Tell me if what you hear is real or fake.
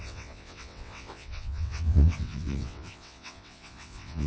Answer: fake